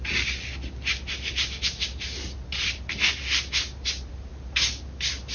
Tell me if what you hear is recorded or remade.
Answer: recorded